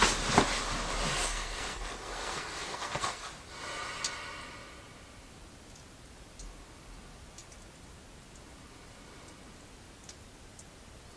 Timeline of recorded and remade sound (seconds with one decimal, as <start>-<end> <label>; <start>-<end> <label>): 0.0-1.1 recorded; 1.1-3.3 remade; 3.3-11.2 recorded